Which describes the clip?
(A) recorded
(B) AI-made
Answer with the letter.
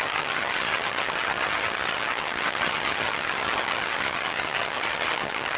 B